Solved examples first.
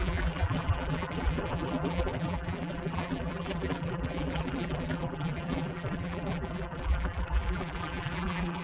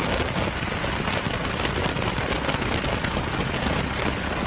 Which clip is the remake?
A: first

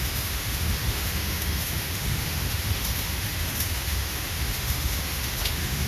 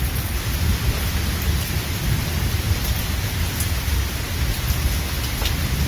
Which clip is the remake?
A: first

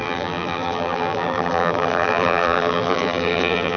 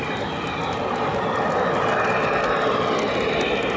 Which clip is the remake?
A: first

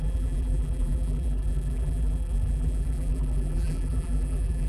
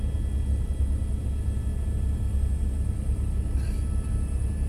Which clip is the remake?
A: first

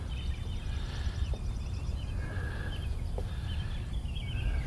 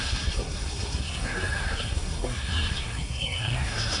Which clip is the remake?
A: second